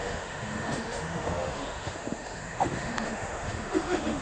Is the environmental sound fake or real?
fake